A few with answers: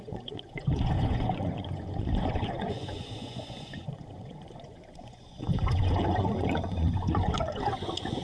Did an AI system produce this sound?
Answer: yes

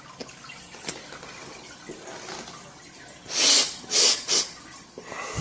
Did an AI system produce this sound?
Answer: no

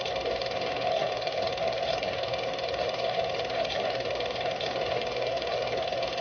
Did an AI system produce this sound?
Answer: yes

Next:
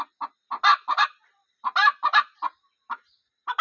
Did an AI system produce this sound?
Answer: no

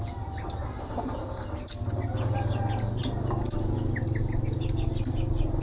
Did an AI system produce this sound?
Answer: no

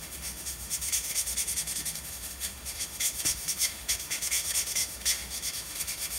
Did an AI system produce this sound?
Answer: yes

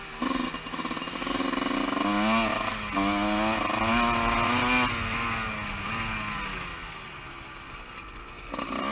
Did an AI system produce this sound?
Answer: no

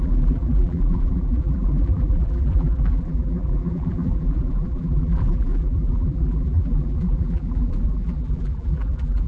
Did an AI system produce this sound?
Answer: yes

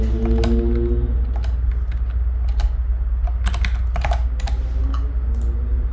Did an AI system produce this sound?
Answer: no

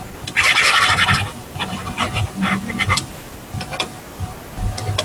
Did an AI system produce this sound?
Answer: no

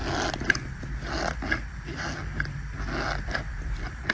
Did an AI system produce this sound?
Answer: no